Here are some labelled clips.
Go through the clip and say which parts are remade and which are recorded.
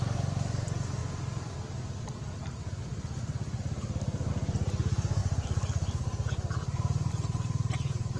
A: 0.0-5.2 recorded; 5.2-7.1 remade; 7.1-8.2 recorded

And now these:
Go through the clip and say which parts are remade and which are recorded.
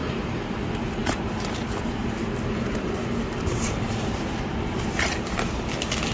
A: 0.0-0.5 remade; 0.5-1.0 recorded; 1.0-4.7 remade; 4.7-6.1 recorded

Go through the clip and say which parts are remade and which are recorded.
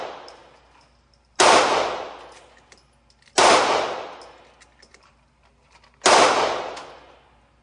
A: 0.0-7.6 recorded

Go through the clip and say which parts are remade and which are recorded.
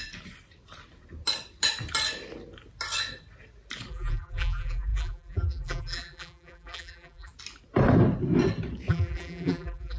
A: 0.0-3.9 recorded; 3.9-7.3 remade; 7.3-8.9 recorded; 8.9-10.0 remade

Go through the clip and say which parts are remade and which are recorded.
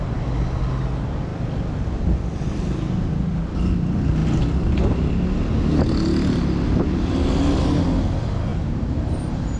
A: 0.0-8.5 recorded; 8.5-9.6 remade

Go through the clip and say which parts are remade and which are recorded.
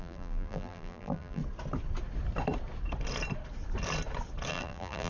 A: 0.0-1.4 remade; 1.4-4.5 recorded; 4.5-5.1 remade